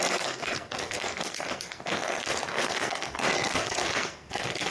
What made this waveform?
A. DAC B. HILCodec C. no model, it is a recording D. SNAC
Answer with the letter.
D